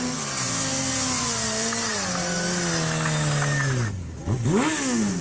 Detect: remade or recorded recorded